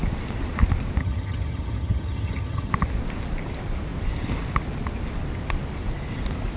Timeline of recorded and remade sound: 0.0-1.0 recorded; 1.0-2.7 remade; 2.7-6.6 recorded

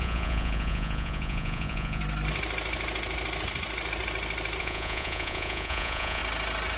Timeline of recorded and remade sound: 0.0-2.0 remade; 2.0-4.6 recorded; 4.6-6.2 remade; 6.2-6.8 recorded

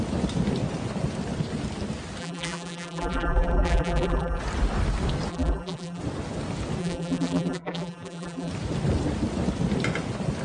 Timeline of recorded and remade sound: 0.0-2.2 recorded; 2.2-4.4 remade; 4.4-5.3 recorded; 5.3-6.0 remade; 6.0-6.8 recorded; 6.8-8.5 remade; 8.5-10.4 recorded

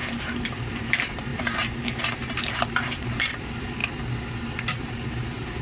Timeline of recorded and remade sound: 0.0-3.8 remade; 3.8-4.8 recorded; 4.8-5.6 remade

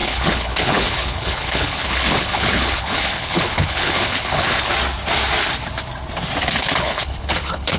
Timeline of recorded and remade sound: 0.0-4.7 remade; 4.7-6.4 recorded; 6.4-7.8 remade

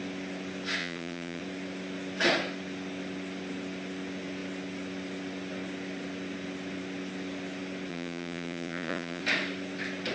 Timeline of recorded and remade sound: 0.0-0.8 recorded; 0.8-1.4 remade; 1.4-7.9 recorded; 7.9-9.2 remade; 9.2-10.1 recorded

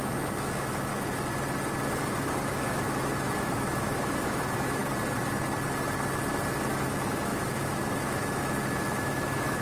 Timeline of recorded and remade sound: 0.0-0.9 remade; 0.9-1.9 recorded; 1.9-4.8 remade; 4.8-6.7 recorded; 6.7-9.6 remade

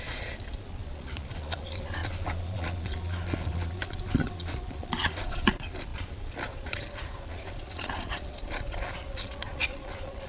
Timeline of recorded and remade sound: 0.0-10.3 remade